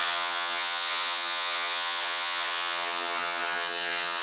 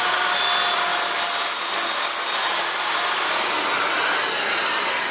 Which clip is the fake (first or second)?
first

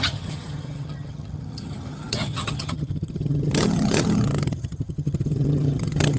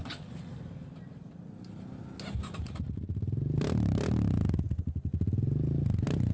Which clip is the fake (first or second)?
first